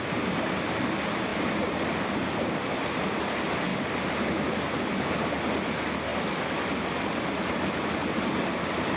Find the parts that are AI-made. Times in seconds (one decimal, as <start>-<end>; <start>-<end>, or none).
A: 3.7-4.6